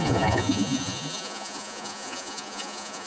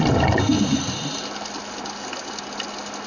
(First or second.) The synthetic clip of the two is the first